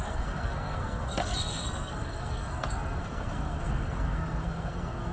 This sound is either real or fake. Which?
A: fake